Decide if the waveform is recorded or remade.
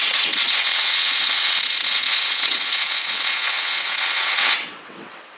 remade